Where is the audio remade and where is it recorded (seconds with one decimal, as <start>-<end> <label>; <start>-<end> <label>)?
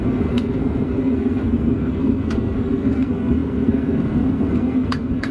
0.0-5.3 remade